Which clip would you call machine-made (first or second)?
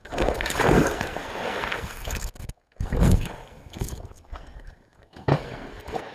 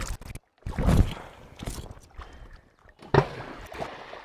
first